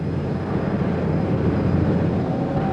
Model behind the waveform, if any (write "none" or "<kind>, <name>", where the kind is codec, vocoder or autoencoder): vocoder, BigVGAN v2